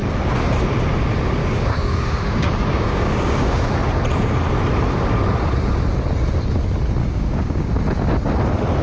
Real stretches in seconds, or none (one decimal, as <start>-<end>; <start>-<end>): 0.0-1.4; 3.7-7.0; 7.7-8.8